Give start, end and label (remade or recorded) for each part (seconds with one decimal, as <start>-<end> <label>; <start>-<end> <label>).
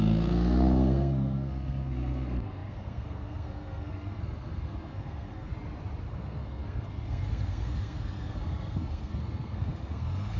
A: 0.0-5.5 remade; 5.5-6.1 recorded; 6.1-10.4 remade